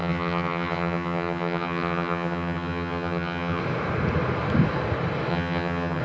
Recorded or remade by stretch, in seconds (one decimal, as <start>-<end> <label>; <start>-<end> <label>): 0.0-3.6 remade; 3.6-5.3 recorded; 5.3-6.0 remade